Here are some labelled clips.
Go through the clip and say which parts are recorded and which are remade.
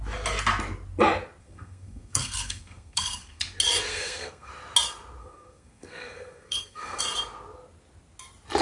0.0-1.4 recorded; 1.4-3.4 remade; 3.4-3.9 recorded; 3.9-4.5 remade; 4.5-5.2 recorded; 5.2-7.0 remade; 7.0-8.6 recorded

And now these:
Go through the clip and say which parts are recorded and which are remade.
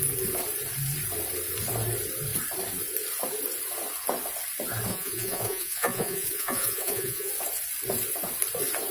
0.0-4.9 recorded; 4.9-7.3 remade; 7.3-8.9 recorded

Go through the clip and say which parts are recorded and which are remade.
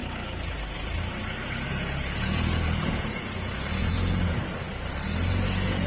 0.0-1.7 recorded; 1.7-4.4 remade; 4.4-5.9 recorded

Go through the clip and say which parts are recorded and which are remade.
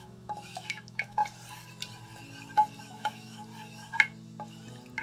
0.0-1.2 remade; 1.2-2.8 recorded; 2.8-3.4 remade; 3.4-5.0 recorded